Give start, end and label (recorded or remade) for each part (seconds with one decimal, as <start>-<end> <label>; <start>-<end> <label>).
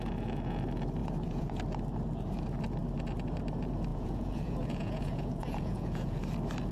0.0-1.0 recorded; 1.0-1.6 remade; 1.6-3.9 recorded; 3.9-6.2 remade; 6.2-6.7 recorded